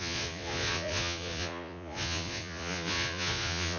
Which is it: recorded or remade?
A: remade